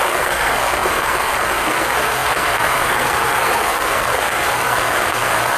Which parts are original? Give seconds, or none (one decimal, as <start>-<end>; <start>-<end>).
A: none